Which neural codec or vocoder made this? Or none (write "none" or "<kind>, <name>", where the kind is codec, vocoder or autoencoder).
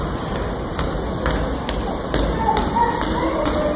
none